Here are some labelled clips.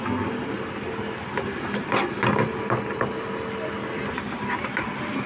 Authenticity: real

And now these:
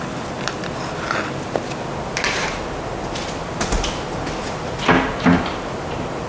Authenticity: real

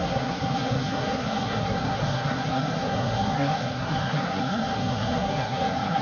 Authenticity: fake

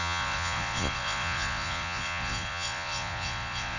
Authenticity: fake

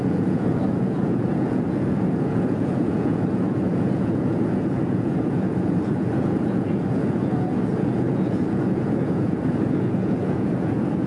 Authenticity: fake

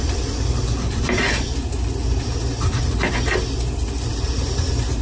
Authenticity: real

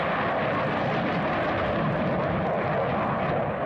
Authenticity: real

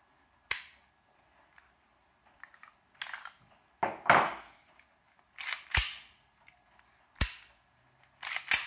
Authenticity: real